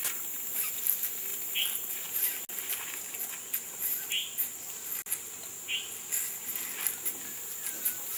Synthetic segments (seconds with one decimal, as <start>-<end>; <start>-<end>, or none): none